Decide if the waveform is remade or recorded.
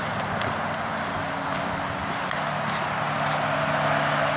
recorded